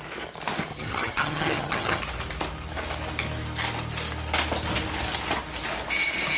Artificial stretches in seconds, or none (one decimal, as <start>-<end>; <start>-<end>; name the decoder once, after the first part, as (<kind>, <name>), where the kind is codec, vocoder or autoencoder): 0.7-2.0 (vocoder, HiFi-GAN)